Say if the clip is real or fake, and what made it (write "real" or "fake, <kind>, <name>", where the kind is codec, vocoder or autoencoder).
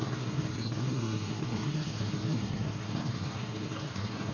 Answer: fake, codec, SNAC